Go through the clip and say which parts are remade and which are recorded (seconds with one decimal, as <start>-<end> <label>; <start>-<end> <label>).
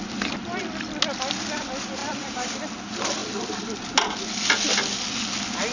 0.0-2.0 recorded; 2.0-2.5 remade; 2.5-3.2 recorded; 3.2-3.9 remade; 3.9-5.7 recorded